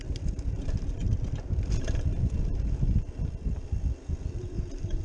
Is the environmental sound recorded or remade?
recorded